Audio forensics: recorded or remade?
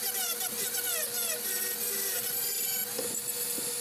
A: recorded